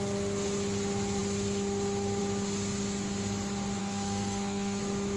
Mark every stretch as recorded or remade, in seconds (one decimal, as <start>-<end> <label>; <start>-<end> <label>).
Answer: 0.0-3.8 recorded; 3.8-4.8 remade; 4.8-5.2 recorded